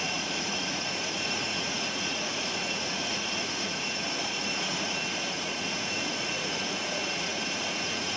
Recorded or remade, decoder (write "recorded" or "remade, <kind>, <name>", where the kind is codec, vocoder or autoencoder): remade, vocoder, Vocos